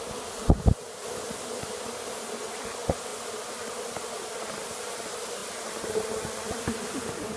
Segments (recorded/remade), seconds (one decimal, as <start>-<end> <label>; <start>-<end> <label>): 0.0-5.4 recorded; 5.4-6.3 remade; 6.3-7.4 recorded